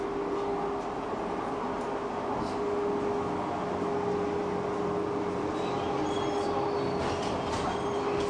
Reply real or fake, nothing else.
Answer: real